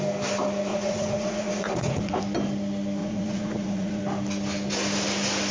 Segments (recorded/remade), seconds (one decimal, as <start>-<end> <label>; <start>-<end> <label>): 0.0-0.7 recorded; 0.7-2.2 remade; 2.2-3.0 recorded; 3.0-4.0 remade; 4.0-5.5 recorded